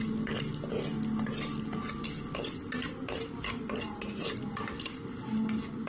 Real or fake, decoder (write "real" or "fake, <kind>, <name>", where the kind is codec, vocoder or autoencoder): real